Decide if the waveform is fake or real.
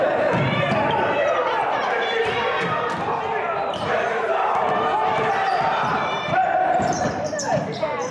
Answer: fake